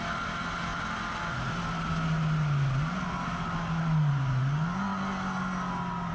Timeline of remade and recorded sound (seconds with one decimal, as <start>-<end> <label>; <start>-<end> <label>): 0.0-6.1 recorded